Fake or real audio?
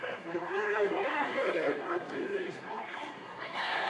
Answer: fake